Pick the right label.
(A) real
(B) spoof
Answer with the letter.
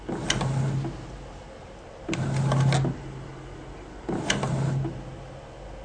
A